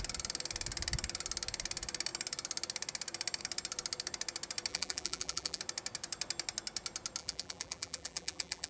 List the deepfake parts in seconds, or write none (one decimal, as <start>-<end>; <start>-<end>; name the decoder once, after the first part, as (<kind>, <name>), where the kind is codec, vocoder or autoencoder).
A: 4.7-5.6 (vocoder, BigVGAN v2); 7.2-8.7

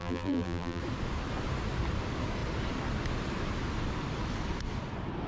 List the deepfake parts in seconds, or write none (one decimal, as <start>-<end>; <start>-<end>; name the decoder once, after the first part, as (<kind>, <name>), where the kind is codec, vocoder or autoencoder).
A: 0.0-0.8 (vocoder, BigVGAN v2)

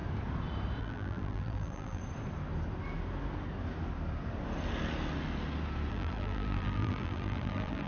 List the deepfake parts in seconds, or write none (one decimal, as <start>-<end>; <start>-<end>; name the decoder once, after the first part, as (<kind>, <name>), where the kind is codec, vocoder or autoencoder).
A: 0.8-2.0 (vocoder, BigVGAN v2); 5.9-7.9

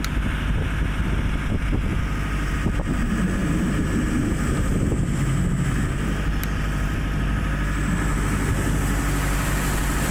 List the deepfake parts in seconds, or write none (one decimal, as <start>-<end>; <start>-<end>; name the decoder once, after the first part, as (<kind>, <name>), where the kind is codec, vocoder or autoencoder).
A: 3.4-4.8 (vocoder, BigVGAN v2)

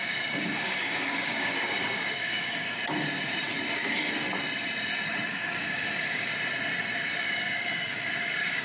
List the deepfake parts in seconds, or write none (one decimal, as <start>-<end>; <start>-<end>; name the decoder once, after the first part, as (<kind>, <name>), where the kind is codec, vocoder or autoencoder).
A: 0.0-2.8 (codec, DAC); 5.3-6.3; 7.2-8.6

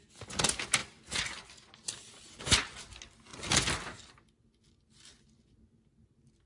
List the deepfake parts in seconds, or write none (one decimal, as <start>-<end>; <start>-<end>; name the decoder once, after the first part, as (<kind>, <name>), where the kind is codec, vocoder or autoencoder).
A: none